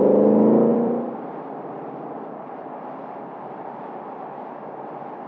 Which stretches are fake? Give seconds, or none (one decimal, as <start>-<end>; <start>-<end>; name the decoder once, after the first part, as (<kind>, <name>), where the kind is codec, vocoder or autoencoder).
0.7-3.9 (vocoder, BigVGAN v2)